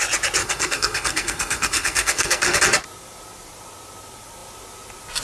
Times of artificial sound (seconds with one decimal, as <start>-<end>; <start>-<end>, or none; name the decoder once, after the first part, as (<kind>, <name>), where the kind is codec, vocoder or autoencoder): 0.4-2.6 (codec, SNAC)